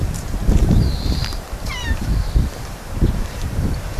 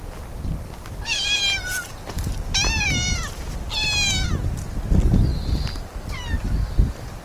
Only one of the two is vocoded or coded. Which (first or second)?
first